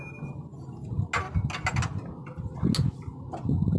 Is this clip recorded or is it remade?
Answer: recorded